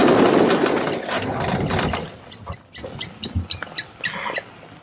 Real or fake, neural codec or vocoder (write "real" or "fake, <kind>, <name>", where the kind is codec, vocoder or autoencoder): real